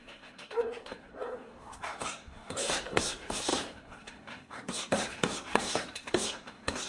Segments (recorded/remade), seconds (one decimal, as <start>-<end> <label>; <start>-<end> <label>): 0.0-6.9 remade